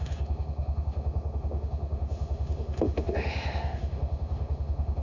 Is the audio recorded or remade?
remade